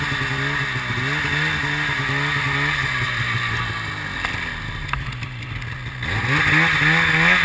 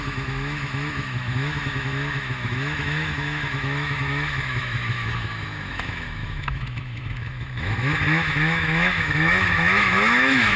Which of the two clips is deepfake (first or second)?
second